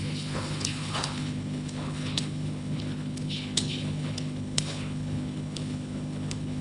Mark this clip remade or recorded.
remade